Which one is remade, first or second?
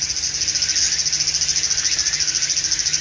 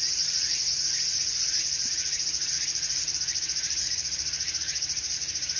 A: second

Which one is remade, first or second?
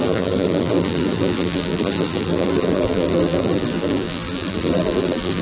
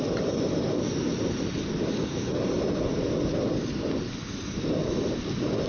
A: first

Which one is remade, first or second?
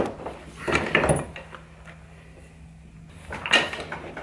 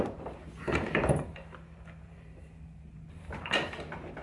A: second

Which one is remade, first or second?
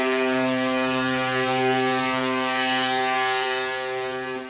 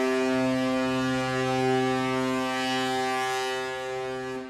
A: first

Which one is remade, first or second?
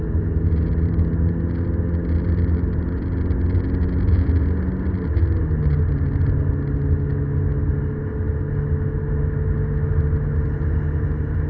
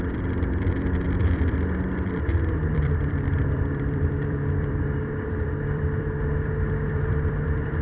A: second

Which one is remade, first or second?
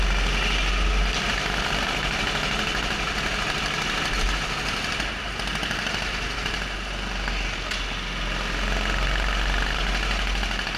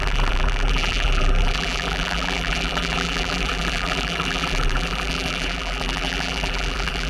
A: second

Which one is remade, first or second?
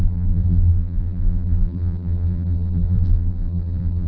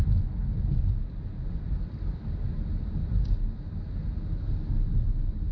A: first